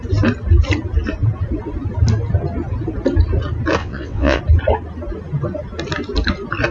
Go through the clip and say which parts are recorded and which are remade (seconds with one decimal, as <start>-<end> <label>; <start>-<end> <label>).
0.0-3.8 recorded; 3.8-4.4 remade; 4.4-6.7 recorded